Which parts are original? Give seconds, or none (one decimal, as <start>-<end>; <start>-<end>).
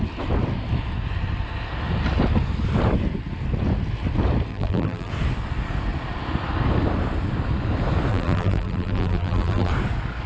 0.0-4.5; 5.1-8.1; 9.7-10.3